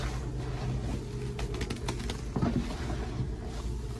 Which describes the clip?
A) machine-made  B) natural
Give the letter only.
B